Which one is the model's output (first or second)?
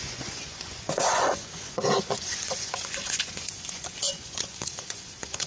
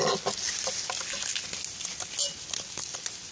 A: first